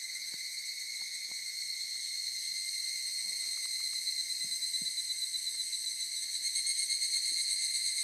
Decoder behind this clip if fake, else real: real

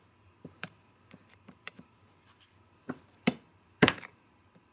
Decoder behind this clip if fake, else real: fake, vocoder, BigVGAN v2